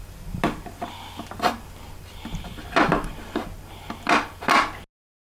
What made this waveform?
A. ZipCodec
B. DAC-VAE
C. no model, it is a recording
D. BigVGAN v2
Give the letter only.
C